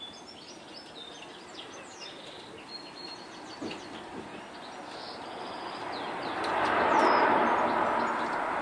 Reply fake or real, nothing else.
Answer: real